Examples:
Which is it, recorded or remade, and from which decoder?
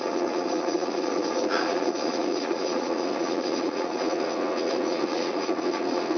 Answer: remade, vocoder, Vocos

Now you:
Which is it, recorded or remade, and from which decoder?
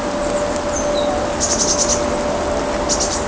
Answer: recorded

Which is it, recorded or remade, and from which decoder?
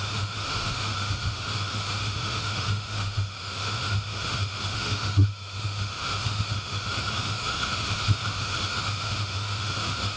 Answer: remade, autoencoder, DAC-VAE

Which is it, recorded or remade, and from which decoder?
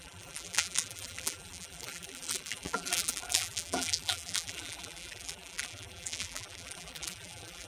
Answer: remade, vocoder, BigVGAN v2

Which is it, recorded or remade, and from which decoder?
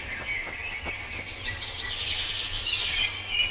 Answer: recorded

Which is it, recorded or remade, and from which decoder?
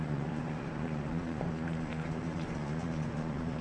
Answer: remade, vocoder, Vocos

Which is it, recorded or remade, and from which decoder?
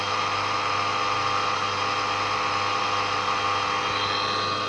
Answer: recorded